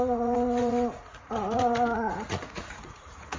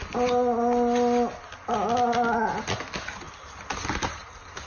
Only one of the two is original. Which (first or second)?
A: second